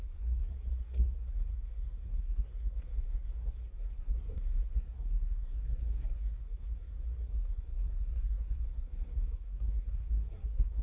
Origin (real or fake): fake